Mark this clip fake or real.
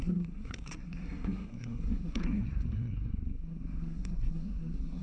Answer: fake